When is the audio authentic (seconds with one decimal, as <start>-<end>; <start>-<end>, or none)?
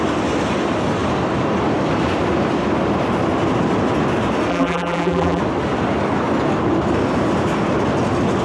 0.0-4.5; 5.4-8.4